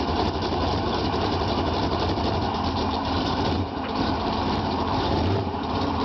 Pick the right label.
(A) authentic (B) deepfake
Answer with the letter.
B